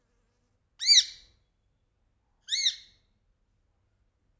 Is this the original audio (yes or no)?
yes